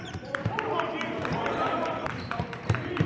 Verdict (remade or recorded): remade